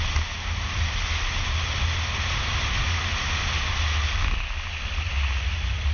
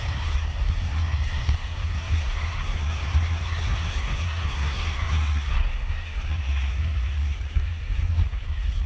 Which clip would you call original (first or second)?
first